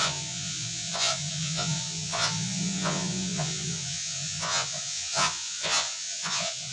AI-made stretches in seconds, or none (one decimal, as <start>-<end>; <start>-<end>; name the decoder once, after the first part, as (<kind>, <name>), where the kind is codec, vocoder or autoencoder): 0.0-6.7 (vocoder, Vocos)